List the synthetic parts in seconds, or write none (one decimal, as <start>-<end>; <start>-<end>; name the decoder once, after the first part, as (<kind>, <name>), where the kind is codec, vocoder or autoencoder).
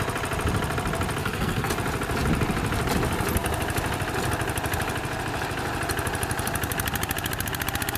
1.2-1.7 (codec, SNAC)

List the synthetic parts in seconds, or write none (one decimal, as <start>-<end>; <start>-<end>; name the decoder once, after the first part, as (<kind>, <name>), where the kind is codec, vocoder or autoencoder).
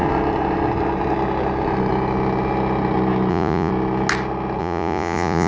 3.3-3.7 (vocoder, Vocos); 4.6-5.5